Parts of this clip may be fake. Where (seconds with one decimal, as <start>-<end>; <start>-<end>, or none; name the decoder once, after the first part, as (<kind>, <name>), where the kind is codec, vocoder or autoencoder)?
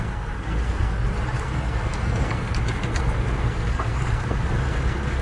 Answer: 0.0-0.9 (codec, SNAC); 1.4-5.2